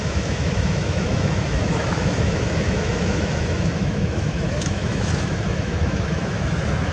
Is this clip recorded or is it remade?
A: remade